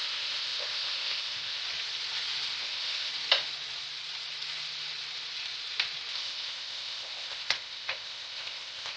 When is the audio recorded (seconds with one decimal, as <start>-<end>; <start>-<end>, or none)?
1.6-2.6; 3.1-6.1